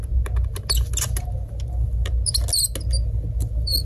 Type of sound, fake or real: real